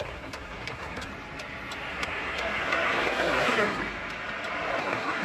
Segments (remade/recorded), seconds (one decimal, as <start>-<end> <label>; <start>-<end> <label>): 0.0-1.1 remade; 1.1-1.9 recorded; 1.9-3.8 remade; 3.8-4.8 recorded; 4.8-5.2 remade